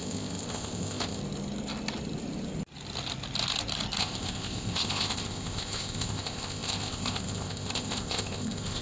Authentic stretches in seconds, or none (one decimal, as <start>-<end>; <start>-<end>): 1.2-4.0